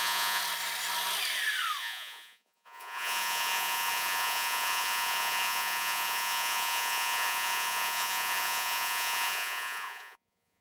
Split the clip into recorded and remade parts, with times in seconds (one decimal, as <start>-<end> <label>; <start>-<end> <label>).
0.0-0.4 remade; 0.4-1.8 recorded; 1.8-10.6 remade